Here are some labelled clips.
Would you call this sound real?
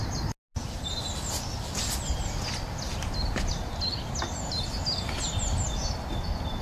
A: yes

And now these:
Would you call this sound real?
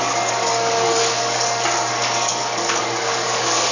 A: no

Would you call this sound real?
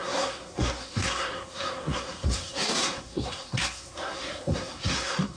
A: no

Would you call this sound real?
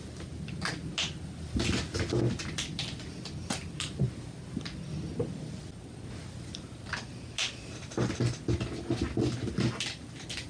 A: yes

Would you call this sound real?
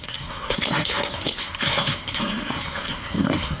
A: no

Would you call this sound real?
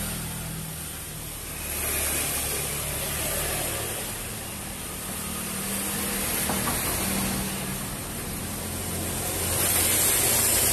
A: yes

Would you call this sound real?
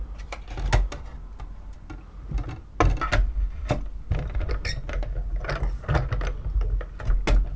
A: yes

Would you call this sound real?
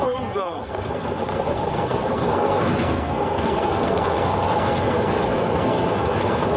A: no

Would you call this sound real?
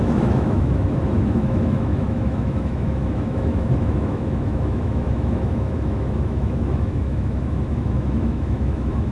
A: no